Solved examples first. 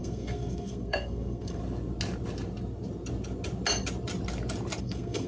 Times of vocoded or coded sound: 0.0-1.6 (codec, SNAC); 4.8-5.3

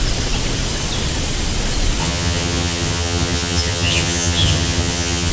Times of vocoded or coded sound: 2.0-5.3 (vocoder, HiFi-GAN)

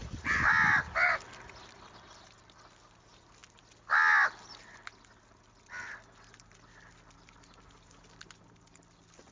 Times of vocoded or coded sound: 0.0-2.1 (vocoder, BigVGAN v2)

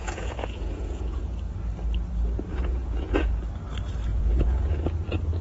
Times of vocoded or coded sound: 0.0-1.2 (vocoder, Vocos); 2.5-3.3; 4.1-4.8

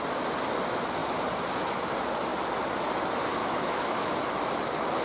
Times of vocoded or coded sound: 3.4-4.1 (autoencoder, DAC-VAE)

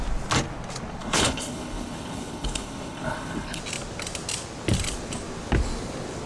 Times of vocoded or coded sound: 1.0-3.6 (codec, HILCodec)

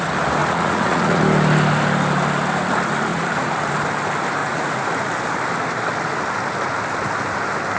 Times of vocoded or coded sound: 0.4-1.2 (vocoder, Vocos); 3.1-3.7; 4.4-5.1